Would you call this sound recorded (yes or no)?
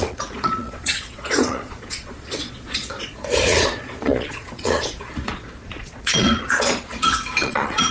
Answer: no